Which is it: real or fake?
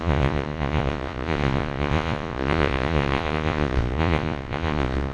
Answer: fake